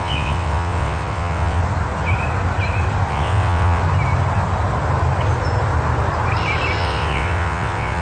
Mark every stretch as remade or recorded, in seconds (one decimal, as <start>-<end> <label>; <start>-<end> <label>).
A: 0.0-1.6 remade; 1.6-3.1 recorded; 3.1-3.8 remade; 3.8-6.8 recorded; 6.8-8.0 remade